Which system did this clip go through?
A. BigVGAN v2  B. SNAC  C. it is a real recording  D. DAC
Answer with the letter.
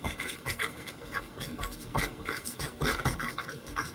B